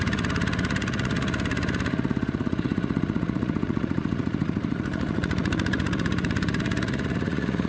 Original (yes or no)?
no